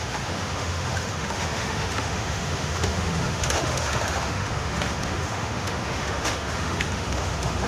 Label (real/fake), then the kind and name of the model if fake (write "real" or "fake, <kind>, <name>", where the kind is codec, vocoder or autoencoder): fake, autoencoder, DAC-VAE